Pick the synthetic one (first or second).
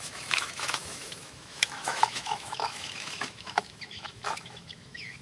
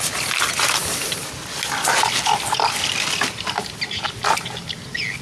first